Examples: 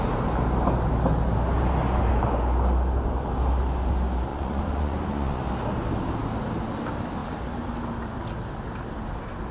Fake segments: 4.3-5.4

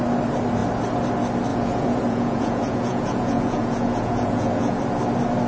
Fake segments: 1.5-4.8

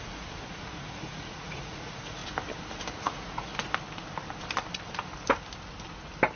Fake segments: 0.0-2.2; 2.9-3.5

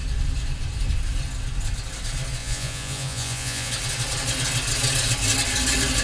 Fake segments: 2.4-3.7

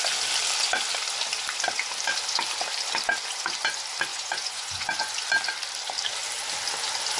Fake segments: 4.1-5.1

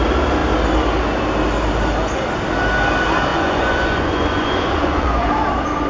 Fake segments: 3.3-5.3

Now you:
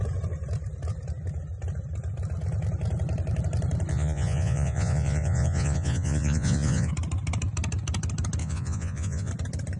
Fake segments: 3.9-6.9; 8.4-9.3